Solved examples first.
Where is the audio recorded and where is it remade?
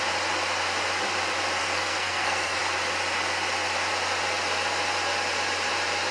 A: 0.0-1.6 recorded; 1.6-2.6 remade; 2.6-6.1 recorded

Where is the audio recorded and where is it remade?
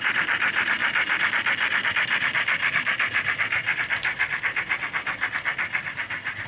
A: 0.0-0.8 remade; 0.8-1.9 recorded; 1.9-6.5 remade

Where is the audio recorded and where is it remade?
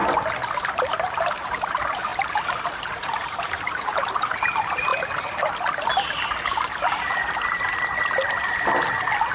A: 0.0-0.9 recorded; 0.9-2.1 remade; 2.1-2.7 recorded; 2.7-4.9 remade; 4.9-9.3 recorded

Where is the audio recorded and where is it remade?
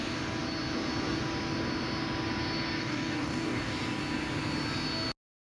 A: 0.0-2.8 recorded; 2.8-3.7 remade; 3.7-5.5 recorded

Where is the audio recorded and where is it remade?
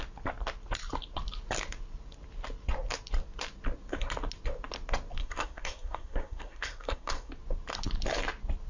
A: 0.0-5.2 recorded; 5.2-7.3 remade; 7.3-8.7 recorded